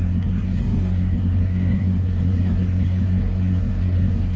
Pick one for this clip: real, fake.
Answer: fake